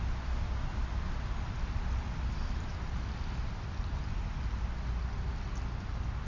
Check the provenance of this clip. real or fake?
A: real